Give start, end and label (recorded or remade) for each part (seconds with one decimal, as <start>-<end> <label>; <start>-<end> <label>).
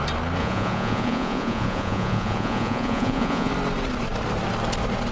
0.0-0.4 recorded; 0.4-3.5 remade; 3.5-5.1 recorded